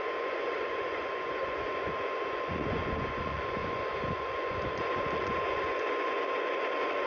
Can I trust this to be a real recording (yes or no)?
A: no